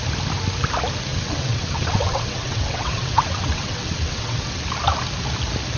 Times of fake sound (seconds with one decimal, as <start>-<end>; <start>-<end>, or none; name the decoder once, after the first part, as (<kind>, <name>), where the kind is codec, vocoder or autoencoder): 1.1-4.6 (vocoder, WaveNeXt)